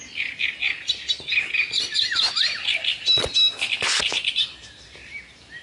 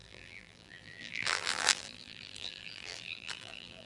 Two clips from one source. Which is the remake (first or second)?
second